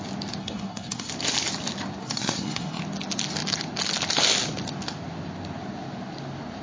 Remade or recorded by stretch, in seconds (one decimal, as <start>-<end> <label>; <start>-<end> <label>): 0.0-0.4 recorded; 0.4-1.1 remade; 1.1-2.0 recorded; 2.0-2.8 remade; 2.8-6.6 recorded